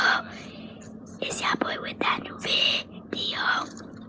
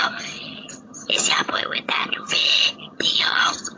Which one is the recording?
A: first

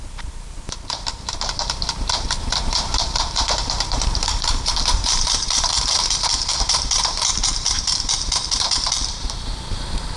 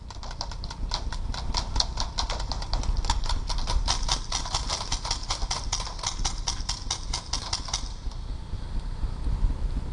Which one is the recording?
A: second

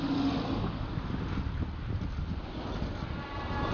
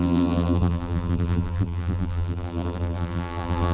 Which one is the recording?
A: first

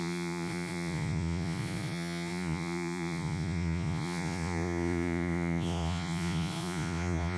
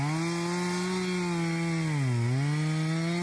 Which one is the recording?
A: second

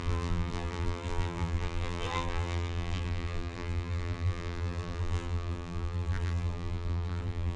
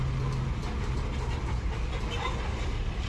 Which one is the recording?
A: second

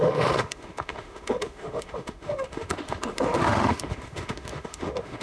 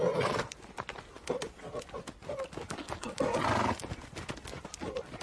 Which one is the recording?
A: second